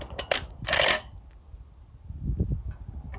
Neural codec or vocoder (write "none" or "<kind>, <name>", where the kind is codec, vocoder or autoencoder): none